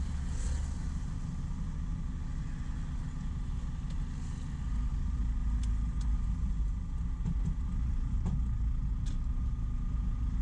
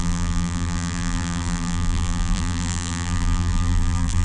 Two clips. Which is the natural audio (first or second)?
first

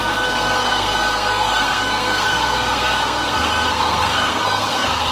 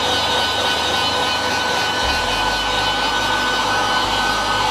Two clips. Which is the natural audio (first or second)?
second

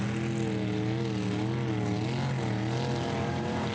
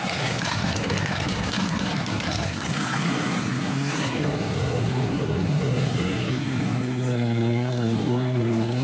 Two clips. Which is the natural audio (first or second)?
first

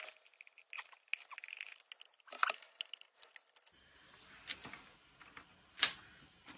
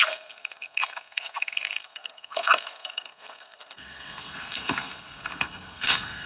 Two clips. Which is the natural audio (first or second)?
first